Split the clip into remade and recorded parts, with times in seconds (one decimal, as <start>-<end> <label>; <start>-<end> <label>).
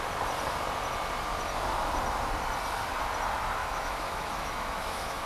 0.0-3.6 recorded; 3.6-5.3 remade